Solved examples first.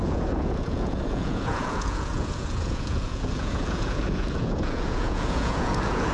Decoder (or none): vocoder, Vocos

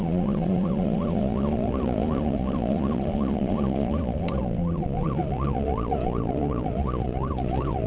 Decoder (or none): vocoder, Vocos